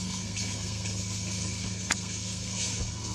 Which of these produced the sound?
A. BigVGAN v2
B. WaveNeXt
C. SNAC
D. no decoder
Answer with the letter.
C